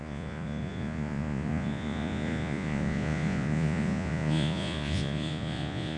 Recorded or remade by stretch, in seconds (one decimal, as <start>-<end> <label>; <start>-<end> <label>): 0.0-6.0 remade